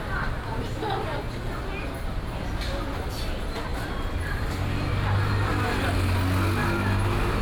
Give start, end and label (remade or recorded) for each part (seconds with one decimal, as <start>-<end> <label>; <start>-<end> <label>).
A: 0.0-3.7 recorded; 3.7-4.7 remade; 4.7-7.4 recorded